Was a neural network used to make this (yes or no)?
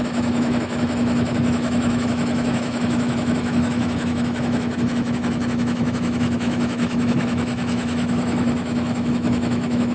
yes